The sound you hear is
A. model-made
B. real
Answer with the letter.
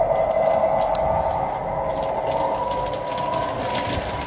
B